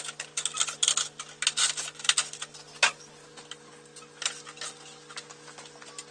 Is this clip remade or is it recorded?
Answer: recorded